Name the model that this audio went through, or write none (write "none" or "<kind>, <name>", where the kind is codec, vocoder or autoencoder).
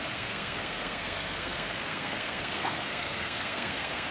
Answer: codec, SNAC